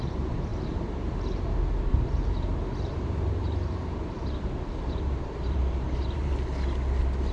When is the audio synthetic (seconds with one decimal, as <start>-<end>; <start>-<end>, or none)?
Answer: 0.5-1.4; 1.9-6.3